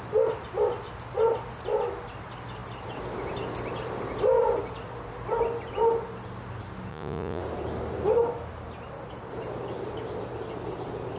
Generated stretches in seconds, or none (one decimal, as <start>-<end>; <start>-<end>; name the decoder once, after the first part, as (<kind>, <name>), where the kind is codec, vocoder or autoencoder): 6.9-7.4 (vocoder, Vocos)